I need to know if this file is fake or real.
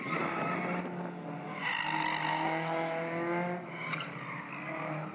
real